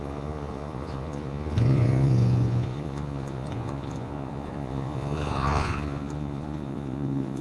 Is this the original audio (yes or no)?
no